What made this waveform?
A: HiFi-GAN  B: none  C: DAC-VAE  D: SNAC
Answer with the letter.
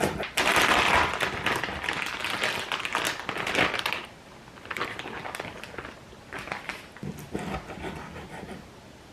B